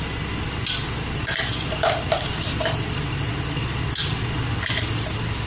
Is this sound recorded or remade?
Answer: recorded